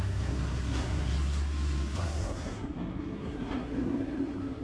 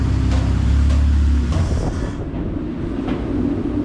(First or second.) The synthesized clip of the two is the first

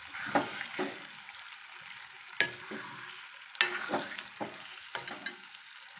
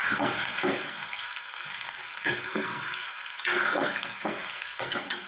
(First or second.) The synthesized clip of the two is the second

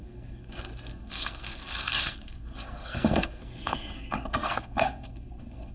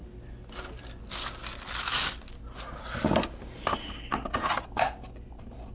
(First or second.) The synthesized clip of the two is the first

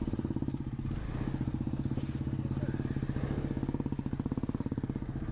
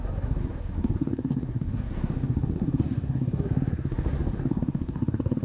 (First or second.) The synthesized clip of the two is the second